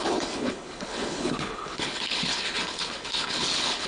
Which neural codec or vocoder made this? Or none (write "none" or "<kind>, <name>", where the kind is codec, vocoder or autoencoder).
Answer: codec, HILCodec